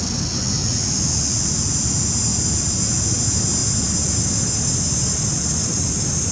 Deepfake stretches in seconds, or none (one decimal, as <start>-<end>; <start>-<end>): 2.3-3.2